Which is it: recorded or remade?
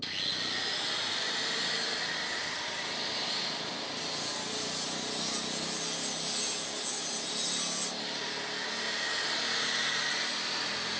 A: recorded